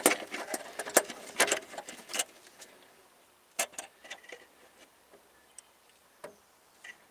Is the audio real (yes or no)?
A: yes